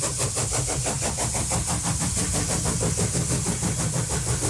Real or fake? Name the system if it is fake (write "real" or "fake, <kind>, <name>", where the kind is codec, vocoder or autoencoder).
real